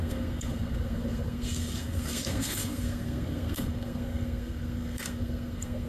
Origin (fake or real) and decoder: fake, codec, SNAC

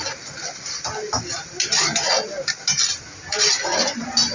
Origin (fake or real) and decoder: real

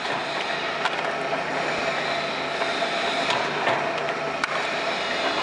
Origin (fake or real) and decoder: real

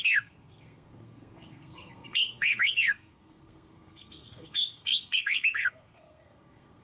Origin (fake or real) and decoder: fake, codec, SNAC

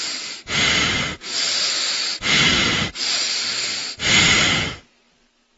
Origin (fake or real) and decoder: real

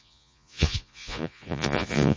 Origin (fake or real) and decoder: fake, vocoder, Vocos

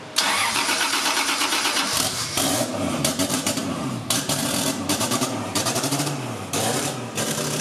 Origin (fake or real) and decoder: fake, vocoder, BigVGAN v2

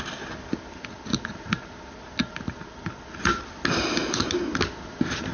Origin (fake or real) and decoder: real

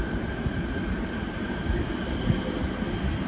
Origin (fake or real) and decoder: real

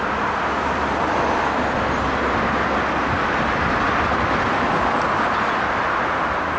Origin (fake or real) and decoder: real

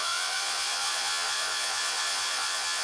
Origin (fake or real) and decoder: fake, vocoder, Vocos